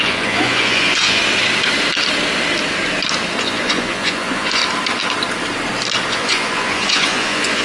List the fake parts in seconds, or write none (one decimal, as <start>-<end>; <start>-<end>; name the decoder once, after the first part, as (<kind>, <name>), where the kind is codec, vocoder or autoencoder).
0.0-1.2 (vocoder, Vocos); 3.4-4.6; 6.1-7.6